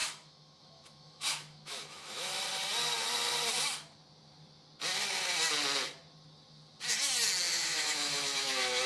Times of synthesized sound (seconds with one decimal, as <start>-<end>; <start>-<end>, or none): 0.0-2.3; 7.5-8.9